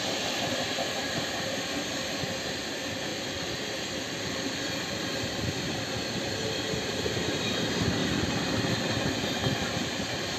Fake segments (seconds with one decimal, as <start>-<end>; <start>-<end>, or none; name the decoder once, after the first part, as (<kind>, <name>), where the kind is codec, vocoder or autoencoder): 3.1-4.6 (vocoder, BigVGAN v2); 9.4-10.0